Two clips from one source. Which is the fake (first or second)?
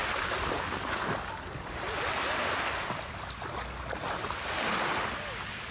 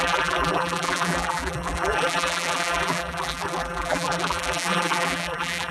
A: second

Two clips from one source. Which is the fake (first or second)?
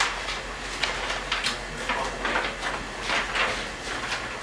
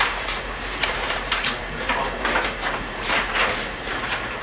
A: second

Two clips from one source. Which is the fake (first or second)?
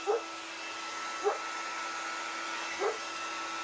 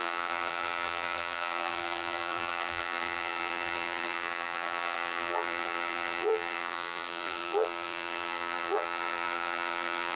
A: second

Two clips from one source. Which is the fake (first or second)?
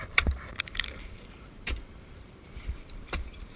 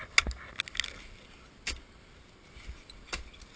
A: first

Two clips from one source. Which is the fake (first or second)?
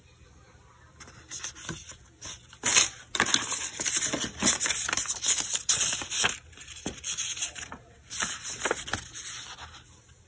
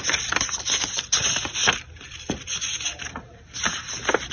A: second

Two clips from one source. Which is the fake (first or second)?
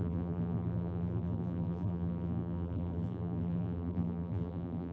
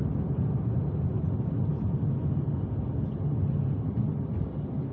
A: first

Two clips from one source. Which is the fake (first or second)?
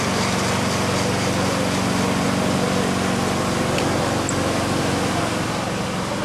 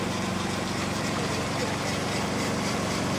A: second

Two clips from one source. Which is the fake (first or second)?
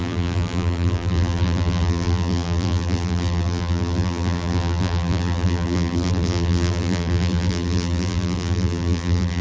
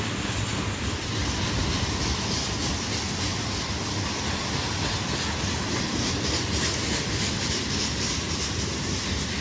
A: first